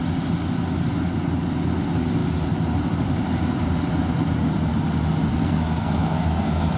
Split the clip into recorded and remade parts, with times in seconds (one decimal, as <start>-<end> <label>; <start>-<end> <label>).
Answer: 0.0-5.3 recorded; 5.3-6.8 remade